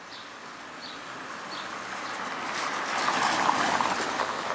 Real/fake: real